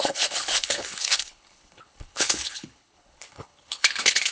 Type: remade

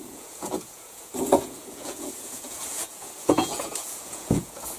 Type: remade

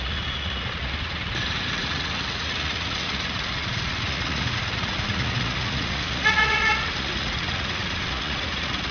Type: remade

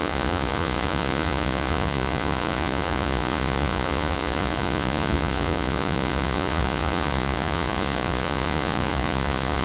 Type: remade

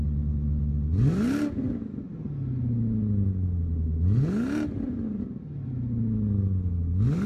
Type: recorded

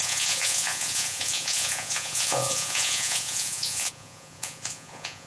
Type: remade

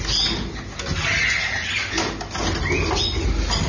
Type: recorded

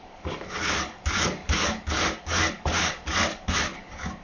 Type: remade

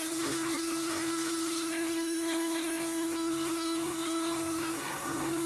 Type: remade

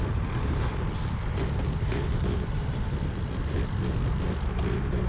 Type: remade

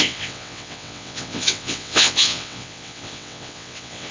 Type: remade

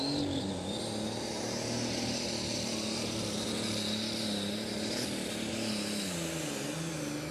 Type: recorded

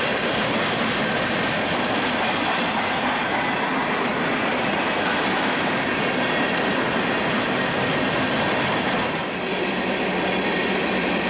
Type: recorded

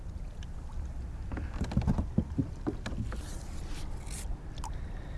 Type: recorded